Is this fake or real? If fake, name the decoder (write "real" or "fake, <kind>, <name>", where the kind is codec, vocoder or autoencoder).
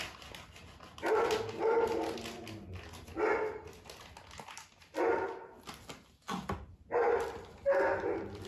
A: real